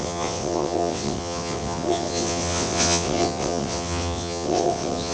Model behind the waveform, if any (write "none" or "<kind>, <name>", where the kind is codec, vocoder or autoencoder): vocoder, WaveNeXt